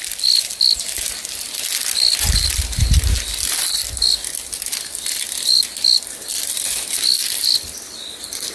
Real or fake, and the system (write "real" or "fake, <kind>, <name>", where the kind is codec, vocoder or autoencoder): real